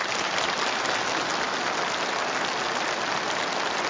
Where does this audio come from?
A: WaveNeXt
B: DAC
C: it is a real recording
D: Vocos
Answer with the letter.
C